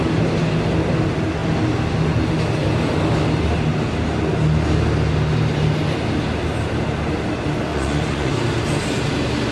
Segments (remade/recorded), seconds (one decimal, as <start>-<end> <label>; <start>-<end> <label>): 0.0-7.7 recorded; 7.7-8.3 remade; 8.3-9.5 recorded